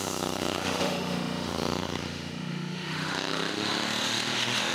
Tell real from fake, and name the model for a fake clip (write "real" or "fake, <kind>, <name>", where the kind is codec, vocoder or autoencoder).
fake, autoencoder, DAC-VAE